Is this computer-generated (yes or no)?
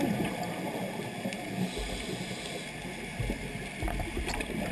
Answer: no